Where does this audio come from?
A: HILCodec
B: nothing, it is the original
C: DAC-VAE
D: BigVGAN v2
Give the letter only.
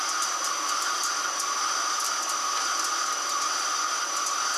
B